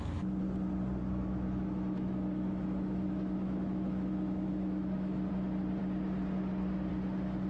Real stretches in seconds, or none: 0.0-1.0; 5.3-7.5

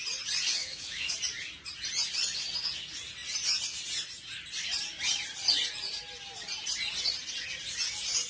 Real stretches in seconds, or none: 0.0-0.6; 1.1-8.3

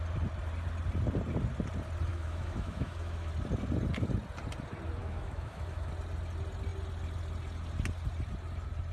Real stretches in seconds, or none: 0.0-2.1; 3.3-5.0; 5.9-8.9

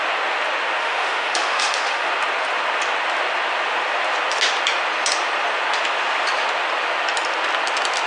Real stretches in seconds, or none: 0.0-0.8; 2.1-8.1

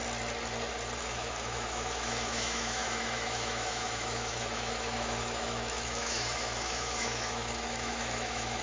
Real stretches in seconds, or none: 0.0-1.0

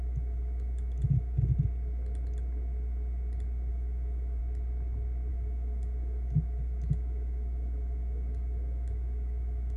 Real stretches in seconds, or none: 1.5-3.7; 4.4-5.3

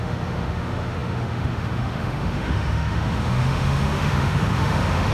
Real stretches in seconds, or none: none